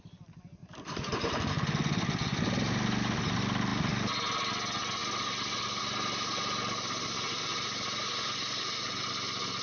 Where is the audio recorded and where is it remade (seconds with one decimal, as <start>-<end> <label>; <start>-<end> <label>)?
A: 0.0-0.6 recorded; 0.6-1.5 remade; 1.5-7.5 recorded; 7.5-9.1 remade; 9.1-9.6 recorded